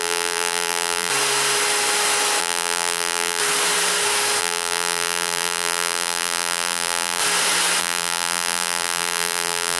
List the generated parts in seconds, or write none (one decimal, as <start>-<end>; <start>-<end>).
0.0-1.1; 2.4-3.4; 4.4-7.2; 7.8-9.8